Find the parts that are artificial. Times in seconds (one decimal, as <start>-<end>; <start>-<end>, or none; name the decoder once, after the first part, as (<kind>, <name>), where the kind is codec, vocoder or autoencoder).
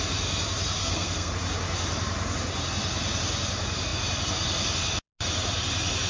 0.8-1.3 (codec, SNAC)